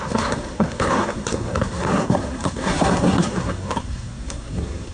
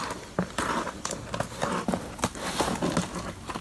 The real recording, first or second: second